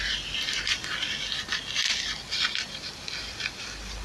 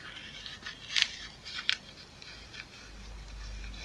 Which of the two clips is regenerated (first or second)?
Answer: first